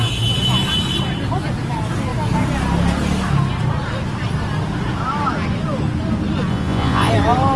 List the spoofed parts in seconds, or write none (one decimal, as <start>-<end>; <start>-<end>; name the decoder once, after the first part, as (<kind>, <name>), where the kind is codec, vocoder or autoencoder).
6.5-7.1 (vocoder, Vocos)